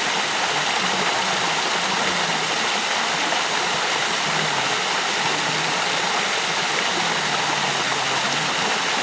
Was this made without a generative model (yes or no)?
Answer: yes